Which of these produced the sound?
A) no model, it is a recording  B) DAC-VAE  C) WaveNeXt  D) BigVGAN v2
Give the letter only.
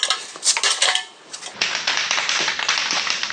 A